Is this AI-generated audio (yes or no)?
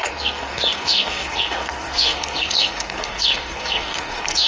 yes